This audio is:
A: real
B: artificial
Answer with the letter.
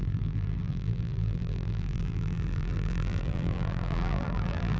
B